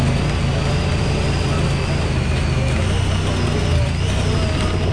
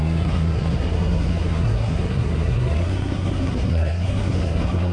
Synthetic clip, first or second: second